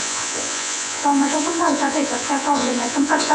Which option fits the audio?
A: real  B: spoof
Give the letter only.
B